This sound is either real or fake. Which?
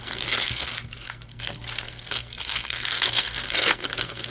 fake